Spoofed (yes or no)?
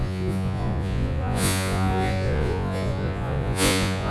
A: yes